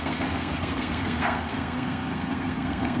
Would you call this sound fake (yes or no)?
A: yes